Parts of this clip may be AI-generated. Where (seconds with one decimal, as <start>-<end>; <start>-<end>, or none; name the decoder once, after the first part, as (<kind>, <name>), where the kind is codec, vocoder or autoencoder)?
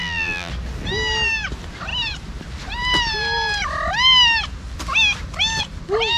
0.0-0.5 (vocoder, BigVGAN v2)